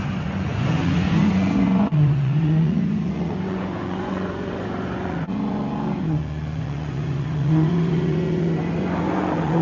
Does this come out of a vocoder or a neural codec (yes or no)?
yes